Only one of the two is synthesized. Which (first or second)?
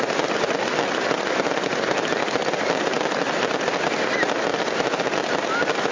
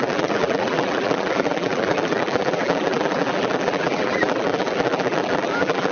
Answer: second